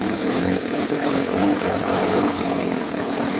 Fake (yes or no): yes